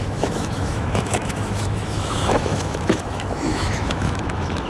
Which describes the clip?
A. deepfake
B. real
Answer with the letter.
A